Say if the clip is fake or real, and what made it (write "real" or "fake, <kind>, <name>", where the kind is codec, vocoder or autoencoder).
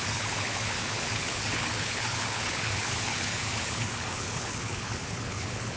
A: fake, codec, HILCodec